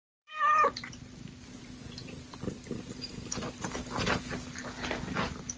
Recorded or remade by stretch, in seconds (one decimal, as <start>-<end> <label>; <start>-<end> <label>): 0.0-3.4 remade; 3.4-5.6 recorded